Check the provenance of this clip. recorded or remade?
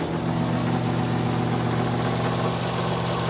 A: recorded